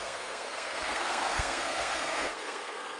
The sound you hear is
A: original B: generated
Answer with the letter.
B